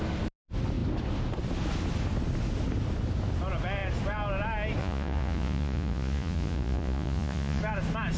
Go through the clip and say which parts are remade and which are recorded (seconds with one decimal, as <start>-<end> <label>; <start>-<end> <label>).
0.0-4.8 recorded; 4.8-7.6 remade; 7.6-8.2 recorded